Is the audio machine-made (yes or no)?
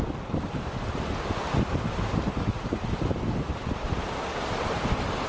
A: no